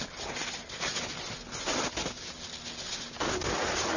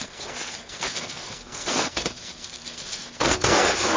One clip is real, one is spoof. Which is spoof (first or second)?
second